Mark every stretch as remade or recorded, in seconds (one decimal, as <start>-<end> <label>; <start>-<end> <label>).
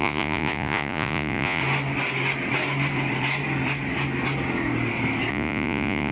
0.0-1.6 remade; 1.6-5.3 recorded; 5.3-6.1 remade